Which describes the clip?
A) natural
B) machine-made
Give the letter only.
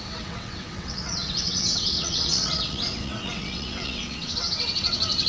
B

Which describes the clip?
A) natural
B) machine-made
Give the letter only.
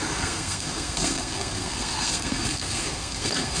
B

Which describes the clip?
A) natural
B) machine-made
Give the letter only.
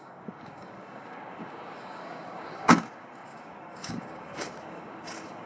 B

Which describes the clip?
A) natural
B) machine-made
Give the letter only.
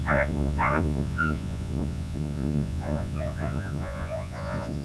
B